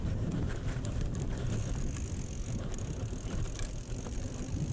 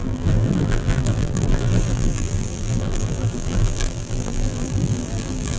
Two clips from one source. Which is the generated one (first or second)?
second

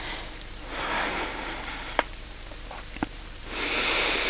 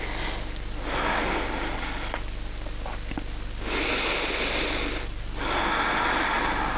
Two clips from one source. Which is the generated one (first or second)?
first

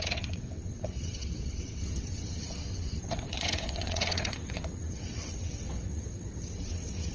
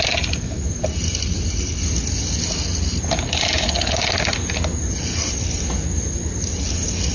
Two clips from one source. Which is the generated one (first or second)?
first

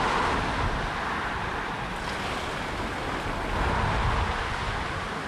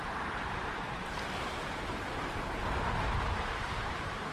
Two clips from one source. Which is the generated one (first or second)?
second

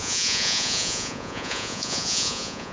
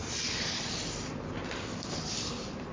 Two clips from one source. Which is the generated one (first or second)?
first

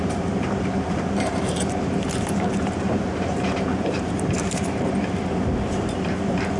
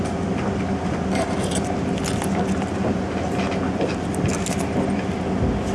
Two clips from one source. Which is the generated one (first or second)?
first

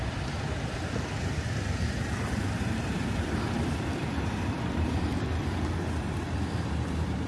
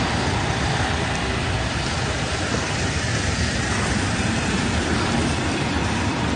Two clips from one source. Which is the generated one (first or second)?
first